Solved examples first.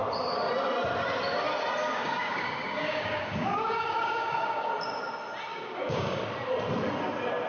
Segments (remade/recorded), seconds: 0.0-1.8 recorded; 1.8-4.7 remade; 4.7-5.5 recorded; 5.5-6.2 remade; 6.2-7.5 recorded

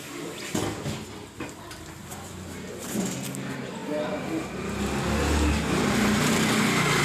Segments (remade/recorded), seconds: 0.0-7.0 recorded

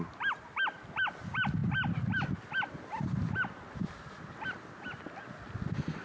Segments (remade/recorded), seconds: 0.0-6.0 recorded

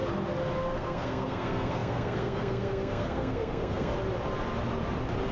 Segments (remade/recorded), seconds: 0.0-0.6 recorded; 0.6-3.9 remade; 3.9-5.3 recorded